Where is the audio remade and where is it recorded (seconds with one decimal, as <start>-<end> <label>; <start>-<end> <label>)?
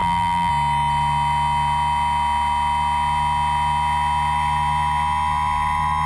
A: 0.0-0.5 remade; 0.5-6.1 recorded